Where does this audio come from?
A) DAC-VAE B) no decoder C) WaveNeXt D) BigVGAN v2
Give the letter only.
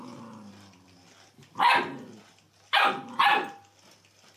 B